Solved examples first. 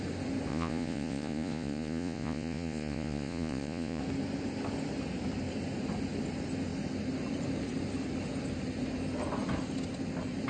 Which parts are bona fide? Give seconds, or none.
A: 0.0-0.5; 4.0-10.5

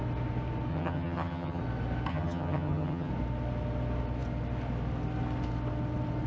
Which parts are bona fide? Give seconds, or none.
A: 0.0-0.7; 1.6-2.1; 3.1-6.3

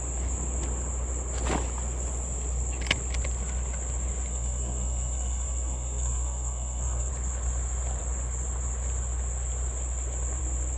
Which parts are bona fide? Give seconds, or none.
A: 0.0-4.3; 7.1-10.8

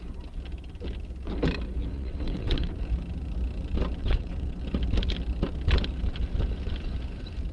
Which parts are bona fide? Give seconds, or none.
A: 0.0-1.9; 2.7-4.0; 4.6-7.5

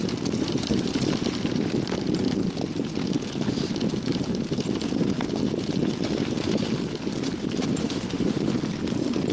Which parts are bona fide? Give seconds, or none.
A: 0.0-7.8; 8.5-9.3

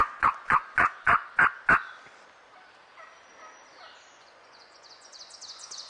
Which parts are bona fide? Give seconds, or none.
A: 1.2-4.1

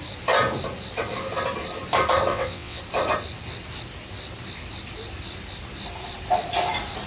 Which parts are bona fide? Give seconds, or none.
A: 0.0-2.3; 2.8-7.1

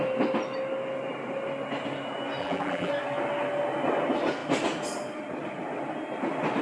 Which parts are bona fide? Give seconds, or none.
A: 0.0-2.4; 2.9-6.6